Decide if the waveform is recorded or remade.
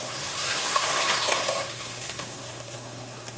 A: remade